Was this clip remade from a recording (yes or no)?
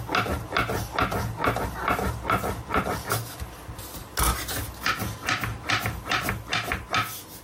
no